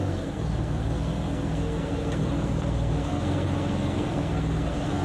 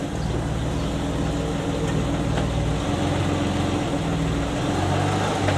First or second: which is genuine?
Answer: second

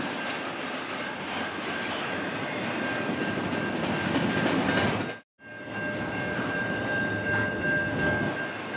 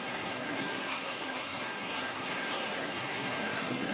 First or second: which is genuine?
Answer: first